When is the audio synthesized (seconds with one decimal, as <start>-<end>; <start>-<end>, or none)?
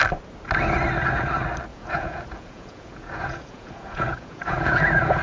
1.7-4.8